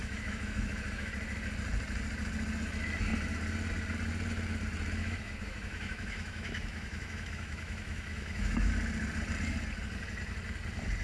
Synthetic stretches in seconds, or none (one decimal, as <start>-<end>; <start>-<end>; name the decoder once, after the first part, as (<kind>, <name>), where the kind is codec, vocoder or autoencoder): 0.0-1.1 (autoencoder, DAC-VAE); 5.0-8.7